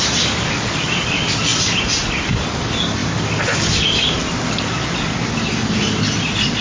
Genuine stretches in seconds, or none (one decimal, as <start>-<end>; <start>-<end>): 0.0-6.6